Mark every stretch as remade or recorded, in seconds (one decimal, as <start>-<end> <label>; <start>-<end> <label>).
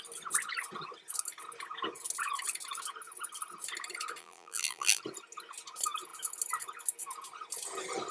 0.0-4.2 recorded; 4.2-5.0 remade; 5.0-8.1 recorded